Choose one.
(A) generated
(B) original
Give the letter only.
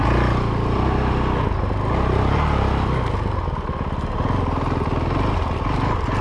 B